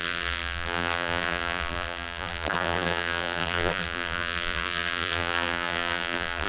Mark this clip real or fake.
fake